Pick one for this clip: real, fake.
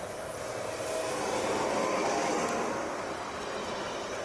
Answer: real